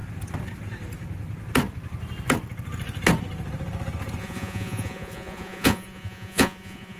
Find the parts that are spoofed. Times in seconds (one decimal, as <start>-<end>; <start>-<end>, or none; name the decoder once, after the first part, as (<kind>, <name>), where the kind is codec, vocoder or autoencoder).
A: 4.2-7.0 (vocoder, Vocos)